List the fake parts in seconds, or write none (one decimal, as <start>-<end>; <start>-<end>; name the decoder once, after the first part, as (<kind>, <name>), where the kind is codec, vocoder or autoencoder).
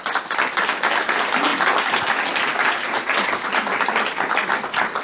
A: none